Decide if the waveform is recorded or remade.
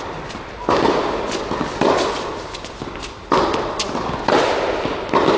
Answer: recorded